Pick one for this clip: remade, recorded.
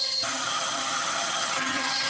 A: remade